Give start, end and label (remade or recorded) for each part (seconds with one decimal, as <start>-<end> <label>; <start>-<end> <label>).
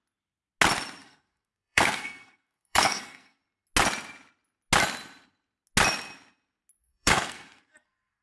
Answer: 0.0-1.0 recorded; 1.0-3.4 remade; 3.4-6.8 recorded; 6.8-8.2 remade